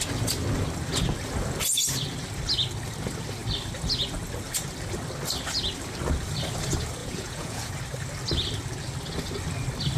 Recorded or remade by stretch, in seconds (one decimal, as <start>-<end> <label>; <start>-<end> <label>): 0.0-7.0 recorded; 7.0-7.7 remade; 7.7-10.0 recorded